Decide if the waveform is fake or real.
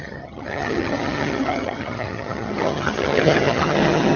fake